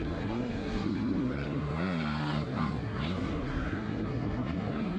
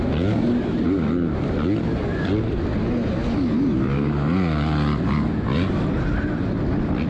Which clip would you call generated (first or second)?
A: first